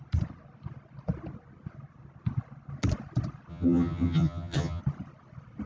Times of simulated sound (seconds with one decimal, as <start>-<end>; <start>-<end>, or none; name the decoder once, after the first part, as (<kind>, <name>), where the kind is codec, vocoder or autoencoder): 3.5-4.8 (vocoder, HiFi-GAN)